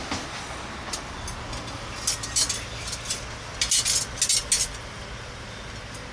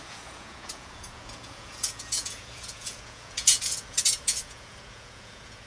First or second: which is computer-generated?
second